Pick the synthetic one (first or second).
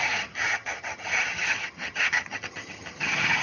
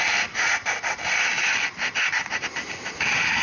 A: first